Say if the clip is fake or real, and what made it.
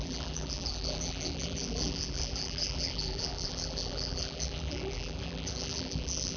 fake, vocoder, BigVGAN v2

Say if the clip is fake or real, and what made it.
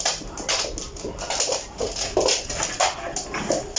real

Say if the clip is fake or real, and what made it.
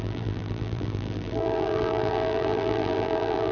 fake, vocoder, BigVGAN v2